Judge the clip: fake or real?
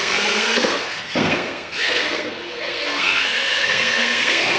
fake